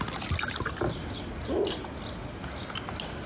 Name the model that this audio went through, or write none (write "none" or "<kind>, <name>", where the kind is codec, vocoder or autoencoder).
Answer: none